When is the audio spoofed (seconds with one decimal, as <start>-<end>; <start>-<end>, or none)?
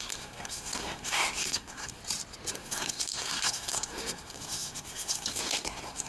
0.0-2.0; 2.5-6.1